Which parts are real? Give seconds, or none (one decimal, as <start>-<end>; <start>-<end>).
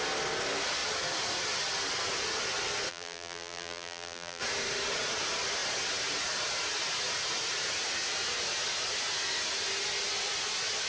0.0-2.9; 4.4-10.9